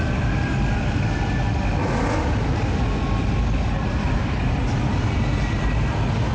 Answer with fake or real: real